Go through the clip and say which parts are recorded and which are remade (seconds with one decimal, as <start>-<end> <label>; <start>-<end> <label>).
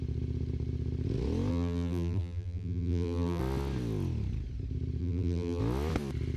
0.0-1.5 recorded; 1.5-3.4 remade; 3.4-5.0 recorded; 5.0-5.6 remade; 5.6-6.4 recorded